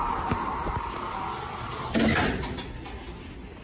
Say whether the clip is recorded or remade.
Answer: recorded